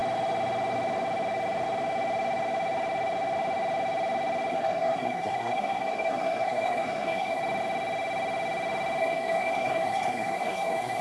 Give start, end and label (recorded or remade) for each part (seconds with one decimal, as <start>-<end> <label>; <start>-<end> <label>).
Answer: 0.0-4.5 recorded; 4.5-7.4 remade; 7.4-9.0 recorded; 9.0-11.0 remade